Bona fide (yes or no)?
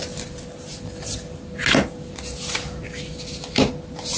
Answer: yes